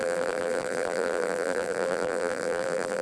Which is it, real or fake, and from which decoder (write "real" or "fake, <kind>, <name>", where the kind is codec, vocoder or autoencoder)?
fake, vocoder, BigVGAN v2